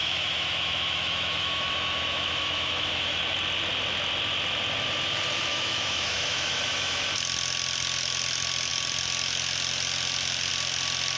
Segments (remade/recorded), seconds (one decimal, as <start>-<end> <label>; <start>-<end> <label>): 0.0-3.2 remade; 3.2-5.5 recorded; 5.5-7.0 remade; 7.0-11.2 recorded